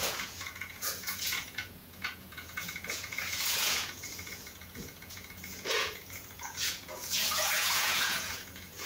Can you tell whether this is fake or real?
fake